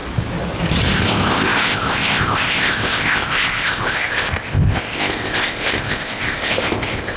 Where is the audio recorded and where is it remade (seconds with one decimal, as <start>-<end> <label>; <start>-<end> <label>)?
0.0-1.0 recorded; 1.0-7.2 remade